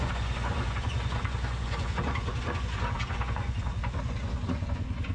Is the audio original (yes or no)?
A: no